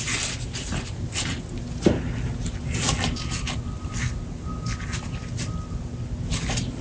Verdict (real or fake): real